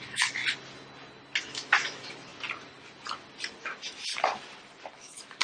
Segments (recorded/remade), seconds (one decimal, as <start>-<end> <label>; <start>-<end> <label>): 0.0-0.4 remade; 0.4-1.4 recorded; 1.4-2.3 remade; 2.3-3.6 recorded; 3.6-4.1 remade; 4.1-4.9 recorded; 4.9-5.4 remade